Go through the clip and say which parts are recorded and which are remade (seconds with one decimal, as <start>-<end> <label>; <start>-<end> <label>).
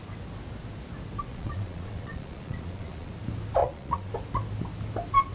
0.0-1.3 recorded; 1.3-3.1 remade; 3.1-3.6 recorded; 3.6-4.1 remade; 4.1-5.3 recorded